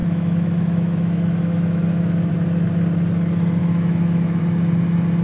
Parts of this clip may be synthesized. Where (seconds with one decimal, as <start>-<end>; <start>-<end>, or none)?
0.0-2.3; 3.6-4.4